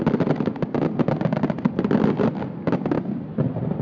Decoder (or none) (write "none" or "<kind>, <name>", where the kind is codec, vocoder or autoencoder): none